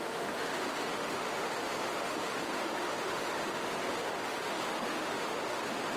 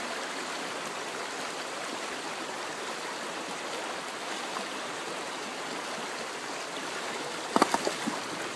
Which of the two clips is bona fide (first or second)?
second